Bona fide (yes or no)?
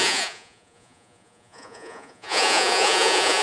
no